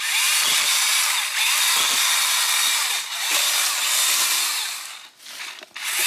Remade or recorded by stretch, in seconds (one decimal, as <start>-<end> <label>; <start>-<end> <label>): 0.0-6.1 recorded